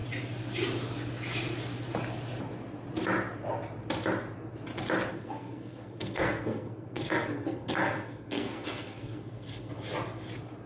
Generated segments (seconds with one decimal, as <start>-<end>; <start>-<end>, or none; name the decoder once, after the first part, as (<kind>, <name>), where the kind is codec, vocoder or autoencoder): 5.1-9.7 (codec, SNAC)